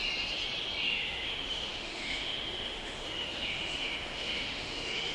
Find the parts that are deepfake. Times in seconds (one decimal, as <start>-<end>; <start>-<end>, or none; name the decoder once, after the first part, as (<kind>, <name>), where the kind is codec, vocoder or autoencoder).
0.8-5.1 (autoencoder, DAC-VAE)